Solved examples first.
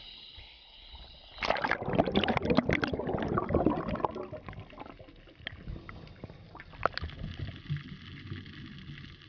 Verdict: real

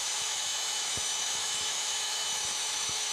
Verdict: fake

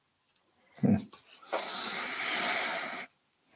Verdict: real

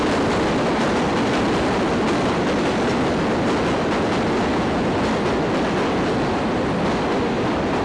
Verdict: real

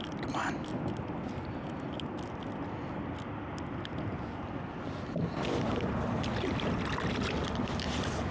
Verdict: real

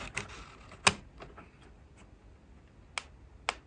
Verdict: real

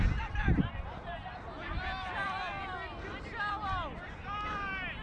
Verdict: fake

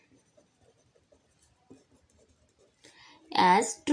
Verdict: real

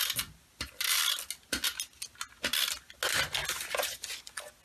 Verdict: real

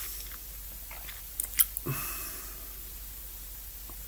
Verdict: real